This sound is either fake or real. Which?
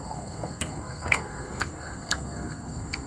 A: fake